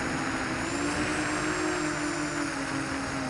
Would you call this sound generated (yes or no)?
no